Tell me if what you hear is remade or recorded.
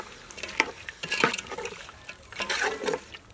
recorded